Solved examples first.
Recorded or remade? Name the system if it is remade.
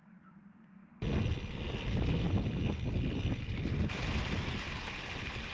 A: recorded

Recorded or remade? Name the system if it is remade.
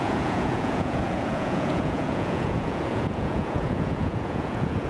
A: remade, vocoder, Vocos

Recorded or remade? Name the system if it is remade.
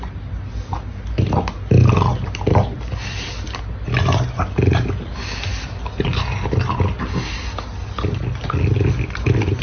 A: recorded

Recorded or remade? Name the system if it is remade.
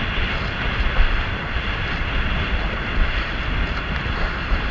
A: recorded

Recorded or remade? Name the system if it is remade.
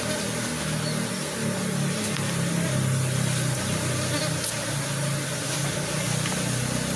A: recorded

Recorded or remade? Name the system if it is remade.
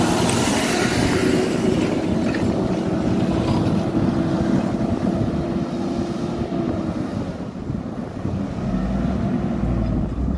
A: recorded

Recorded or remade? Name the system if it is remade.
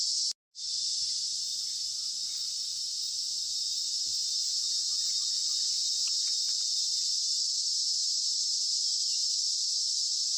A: recorded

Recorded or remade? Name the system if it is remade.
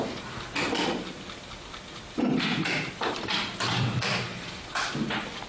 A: remade, vocoder, BigVGAN v2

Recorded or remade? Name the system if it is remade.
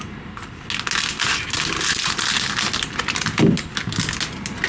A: recorded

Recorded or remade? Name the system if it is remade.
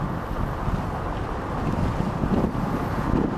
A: recorded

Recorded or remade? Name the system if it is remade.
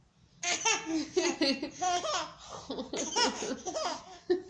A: recorded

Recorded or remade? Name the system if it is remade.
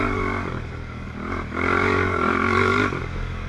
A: remade, codec, DAC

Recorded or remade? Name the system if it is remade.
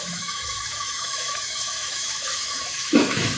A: remade, autoencoder, DAC-VAE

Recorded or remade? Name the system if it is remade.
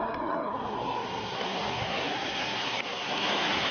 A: remade, codec, SNAC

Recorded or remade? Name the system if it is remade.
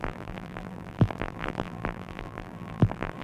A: remade, vocoder, BigVGAN v2